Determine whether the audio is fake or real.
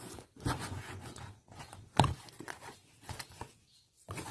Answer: fake